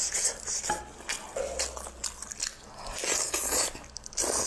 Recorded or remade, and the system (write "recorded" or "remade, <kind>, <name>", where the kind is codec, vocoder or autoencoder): recorded